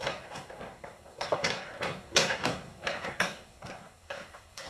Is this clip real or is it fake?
fake